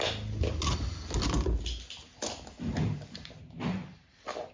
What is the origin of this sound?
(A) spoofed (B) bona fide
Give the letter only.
B